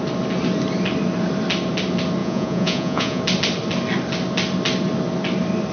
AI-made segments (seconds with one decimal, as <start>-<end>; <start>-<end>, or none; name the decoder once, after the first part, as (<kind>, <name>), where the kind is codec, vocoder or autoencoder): 2.2-3.2 (vocoder, Vocos)